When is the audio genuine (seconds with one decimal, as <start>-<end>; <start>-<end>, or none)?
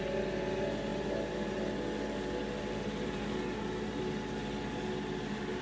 0.0-5.6